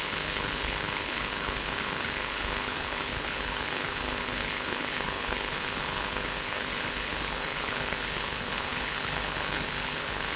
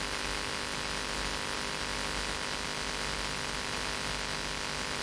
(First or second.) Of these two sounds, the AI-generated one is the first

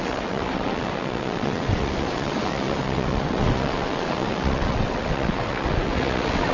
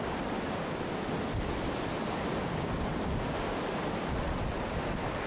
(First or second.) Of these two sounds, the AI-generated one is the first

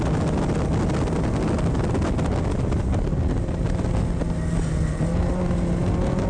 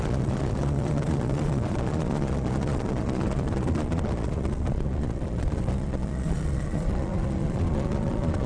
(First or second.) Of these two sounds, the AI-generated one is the second